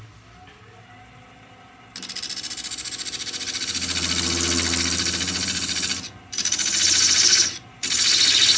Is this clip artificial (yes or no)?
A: no